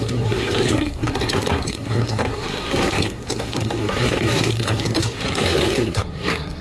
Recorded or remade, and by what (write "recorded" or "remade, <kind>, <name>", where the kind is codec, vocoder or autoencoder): remade, codec, SNAC